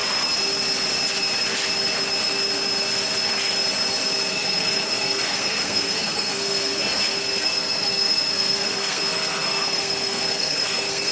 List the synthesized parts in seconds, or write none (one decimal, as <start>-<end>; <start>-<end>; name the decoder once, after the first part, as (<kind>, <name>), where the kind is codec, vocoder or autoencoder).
4.3-11.1 (codec, SNAC)